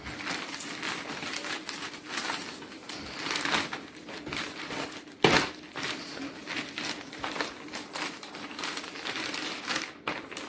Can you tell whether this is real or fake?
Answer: real